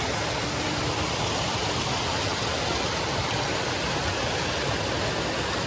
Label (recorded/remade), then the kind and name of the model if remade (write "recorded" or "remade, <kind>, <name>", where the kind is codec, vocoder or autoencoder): recorded